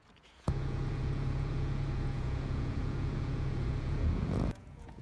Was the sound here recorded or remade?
remade